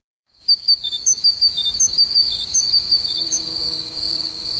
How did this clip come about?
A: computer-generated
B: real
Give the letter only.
A